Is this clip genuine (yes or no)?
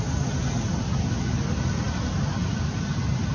yes